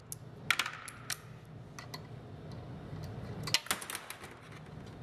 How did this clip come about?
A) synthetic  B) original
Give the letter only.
B